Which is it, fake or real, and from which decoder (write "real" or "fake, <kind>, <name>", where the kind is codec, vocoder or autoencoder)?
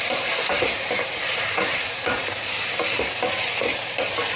fake, vocoder, BigVGAN v2